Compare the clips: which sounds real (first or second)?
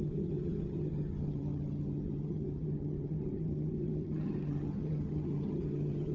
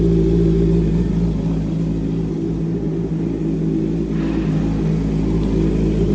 second